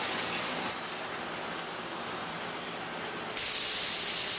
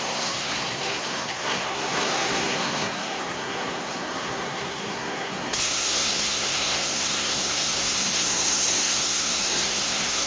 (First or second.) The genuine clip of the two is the first